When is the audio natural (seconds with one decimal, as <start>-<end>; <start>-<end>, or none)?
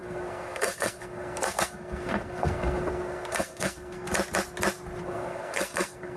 4.1-5.0